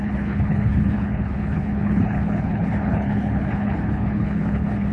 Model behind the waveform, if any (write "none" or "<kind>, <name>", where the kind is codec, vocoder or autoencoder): codec, HILCodec